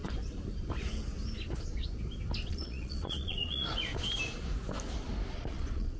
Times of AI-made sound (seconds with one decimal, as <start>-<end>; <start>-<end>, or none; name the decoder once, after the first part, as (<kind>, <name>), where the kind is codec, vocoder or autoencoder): 2.5-3.9 (vocoder, Vocos); 5.3-6.0

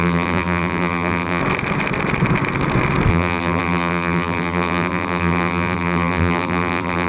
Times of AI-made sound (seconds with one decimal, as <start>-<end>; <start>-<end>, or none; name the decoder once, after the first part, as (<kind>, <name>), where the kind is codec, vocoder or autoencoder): 0.0-1.4 (vocoder, BigVGAN v2); 3.1-7.1

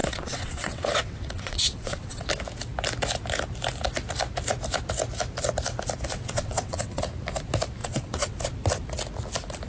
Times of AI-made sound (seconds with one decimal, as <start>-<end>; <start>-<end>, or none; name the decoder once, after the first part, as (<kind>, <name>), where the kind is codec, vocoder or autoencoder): 0.0-2.2 (vocoder, WaveNeXt); 6.1-7.0; 7.8-8.5

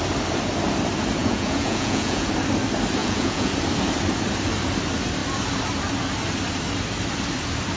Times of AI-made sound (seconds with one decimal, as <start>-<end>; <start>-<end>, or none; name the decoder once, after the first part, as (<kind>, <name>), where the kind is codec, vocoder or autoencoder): 1.2-2.3 (vocoder, Vocos); 3.0-3.5

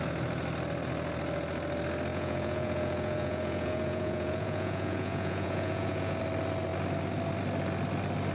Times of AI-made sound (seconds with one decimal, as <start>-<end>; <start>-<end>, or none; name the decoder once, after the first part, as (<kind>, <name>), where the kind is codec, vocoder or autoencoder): 2.1-6.2 (vocoder, Vocos)

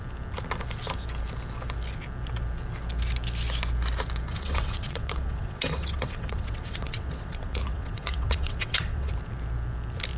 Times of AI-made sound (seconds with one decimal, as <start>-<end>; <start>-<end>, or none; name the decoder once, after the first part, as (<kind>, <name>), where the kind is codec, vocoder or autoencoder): 4.3-9.1 (vocoder, WaveNeXt)